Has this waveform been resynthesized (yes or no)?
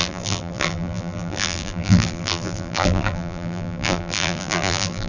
yes